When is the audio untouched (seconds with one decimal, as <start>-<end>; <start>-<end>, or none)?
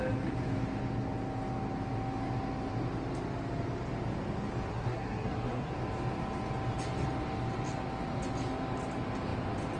0.0-4.7; 5.7-9.8